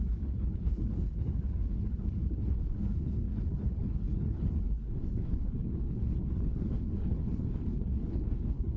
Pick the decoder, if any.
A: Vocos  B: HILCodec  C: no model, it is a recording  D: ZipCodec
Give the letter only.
B